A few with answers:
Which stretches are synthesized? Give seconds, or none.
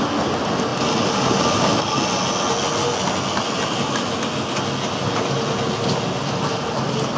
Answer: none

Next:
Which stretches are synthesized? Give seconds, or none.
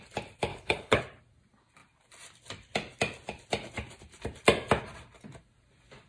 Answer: 0.5-1.0 (codec, HILCodec)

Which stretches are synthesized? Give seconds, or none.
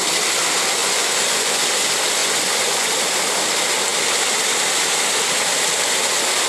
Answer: 0.8-1.6 (vocoder, Vocos); 2.2-2.9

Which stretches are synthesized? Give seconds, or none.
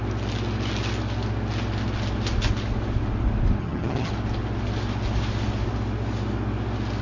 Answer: 3.6-4.1 (vocoder, HiFi-GAN)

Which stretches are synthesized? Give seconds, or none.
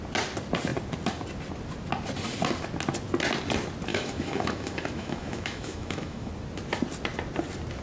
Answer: 3.9-6.3 (autoencoder, DAC-VAE)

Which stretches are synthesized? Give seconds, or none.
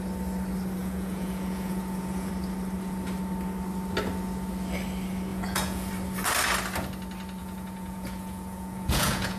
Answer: 0.8-2.3 (vocoder, Vocos); 5.3-5.9; 7.4-9.4